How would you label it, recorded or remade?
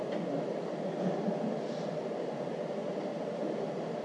recorded